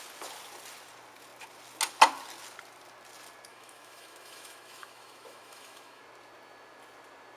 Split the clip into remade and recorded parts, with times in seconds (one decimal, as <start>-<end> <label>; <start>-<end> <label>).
0.0-3.5 recorded; 3.5-6.0 remade; 6.0-7.4 recorded